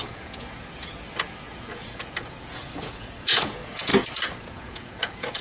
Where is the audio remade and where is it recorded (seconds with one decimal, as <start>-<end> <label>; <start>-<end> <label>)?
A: 0.0-3.9 remade; 3.9-4.4 recorded; 4.4-5.4 remade